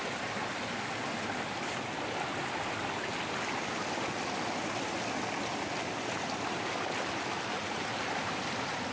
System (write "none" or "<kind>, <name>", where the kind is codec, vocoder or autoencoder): none